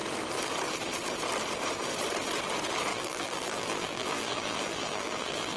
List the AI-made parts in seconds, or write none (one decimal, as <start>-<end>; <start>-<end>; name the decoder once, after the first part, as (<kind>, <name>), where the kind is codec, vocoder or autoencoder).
2.9-5.6 (vocoder, BigVGAN v2)